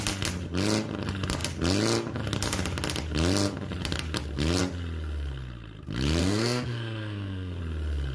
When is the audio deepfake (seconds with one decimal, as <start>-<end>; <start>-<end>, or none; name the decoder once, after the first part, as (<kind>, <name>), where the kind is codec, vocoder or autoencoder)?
6.2-7.6 (codec, SNAC)